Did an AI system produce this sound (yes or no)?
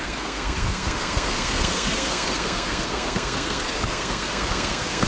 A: yes